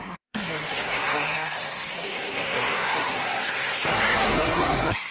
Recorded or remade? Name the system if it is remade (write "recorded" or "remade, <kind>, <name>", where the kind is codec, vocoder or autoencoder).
remade, codec, SNAC